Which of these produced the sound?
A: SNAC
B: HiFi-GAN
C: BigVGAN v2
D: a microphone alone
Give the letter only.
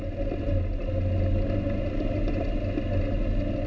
D